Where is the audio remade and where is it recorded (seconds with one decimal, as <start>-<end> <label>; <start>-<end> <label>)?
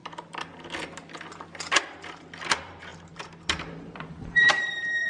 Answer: 0.0-2.5 recorded; 2.5-2.9 remade; 2.9-3.8 recorded; 3.8-5.1 remade